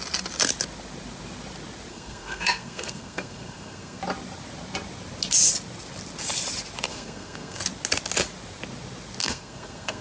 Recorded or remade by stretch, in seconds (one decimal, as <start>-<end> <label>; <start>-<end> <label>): 0.0-1.9 recorded; 1.9-4.0 remade; 4.0-6.9 recorded; 6.9-7.6 remade; 7.6-9.2 recorded; 9.2-10.0 remade